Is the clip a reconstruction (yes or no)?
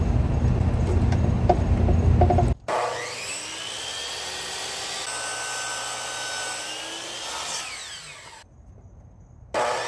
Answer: no